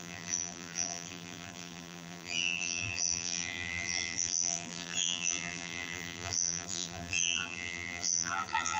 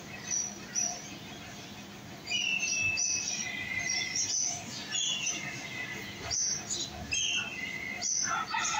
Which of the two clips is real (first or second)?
second